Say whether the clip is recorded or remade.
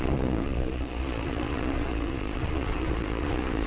remade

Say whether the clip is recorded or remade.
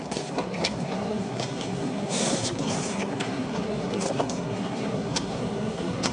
remade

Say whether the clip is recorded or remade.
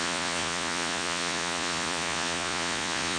remade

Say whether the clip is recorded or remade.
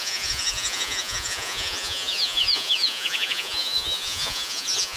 remade